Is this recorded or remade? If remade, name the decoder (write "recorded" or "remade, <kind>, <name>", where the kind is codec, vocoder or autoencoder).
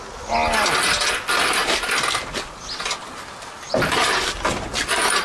recorded